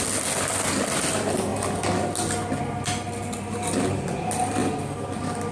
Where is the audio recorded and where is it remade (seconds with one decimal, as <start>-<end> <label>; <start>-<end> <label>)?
0.0-5.5 recorded